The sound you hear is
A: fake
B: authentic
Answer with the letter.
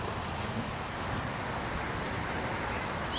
B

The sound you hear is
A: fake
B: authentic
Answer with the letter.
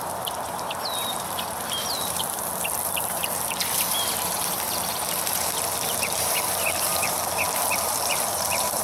A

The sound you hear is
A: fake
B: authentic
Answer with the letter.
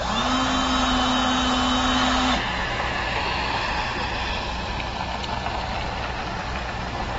B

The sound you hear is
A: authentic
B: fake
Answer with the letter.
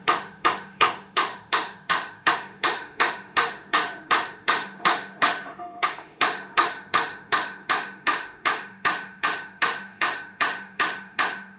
B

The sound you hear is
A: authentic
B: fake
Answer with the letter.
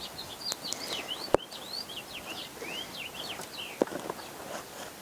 A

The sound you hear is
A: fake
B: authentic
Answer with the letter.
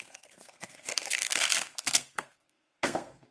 A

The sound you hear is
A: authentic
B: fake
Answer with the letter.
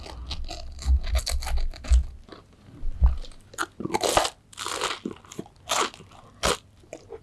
A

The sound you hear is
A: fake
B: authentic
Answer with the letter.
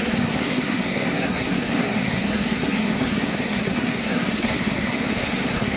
A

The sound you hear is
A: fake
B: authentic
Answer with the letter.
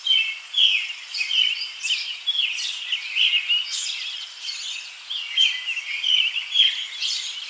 B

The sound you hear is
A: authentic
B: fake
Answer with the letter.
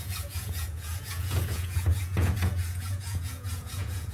B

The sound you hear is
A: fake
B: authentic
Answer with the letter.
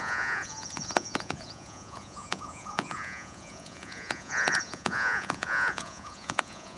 A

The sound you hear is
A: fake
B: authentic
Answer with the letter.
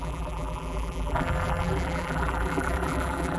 A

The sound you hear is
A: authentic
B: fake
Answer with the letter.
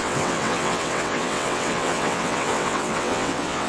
B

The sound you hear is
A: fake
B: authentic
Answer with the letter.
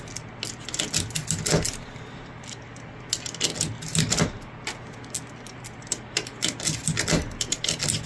B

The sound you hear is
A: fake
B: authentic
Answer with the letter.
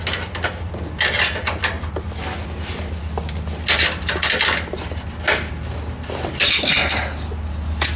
B